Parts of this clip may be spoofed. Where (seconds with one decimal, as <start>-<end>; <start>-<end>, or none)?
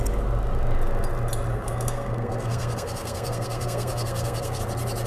1.5-4.6